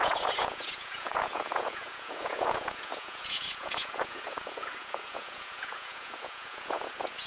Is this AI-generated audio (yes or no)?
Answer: yes